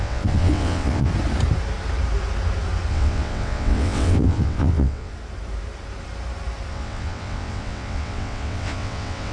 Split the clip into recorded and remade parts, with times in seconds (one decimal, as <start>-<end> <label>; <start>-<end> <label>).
0.0-1.1 remade; 1.1-2.9 recorded; 2.9-5.1 remade; 5.1-6.7 recorded; 6.7-9.3 remade